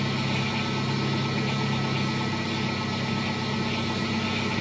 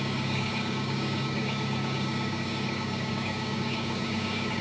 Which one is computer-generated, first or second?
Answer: second